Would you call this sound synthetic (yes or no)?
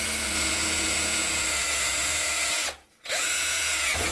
yes